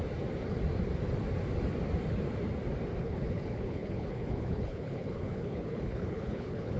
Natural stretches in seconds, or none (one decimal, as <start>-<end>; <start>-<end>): 0.0-3.0